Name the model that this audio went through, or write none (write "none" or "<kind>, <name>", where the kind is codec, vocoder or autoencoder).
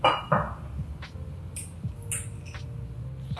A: none